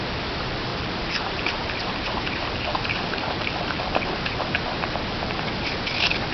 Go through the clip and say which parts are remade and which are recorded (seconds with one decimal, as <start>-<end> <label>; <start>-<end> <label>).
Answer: 0.0-0.7 recorded; 0.7-3.9 remade; 3.9-6.3 recorded